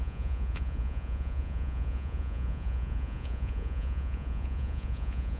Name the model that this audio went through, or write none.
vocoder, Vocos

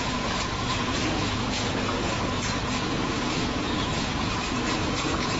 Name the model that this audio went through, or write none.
vocoder, Vocos